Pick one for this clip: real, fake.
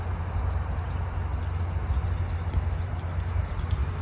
real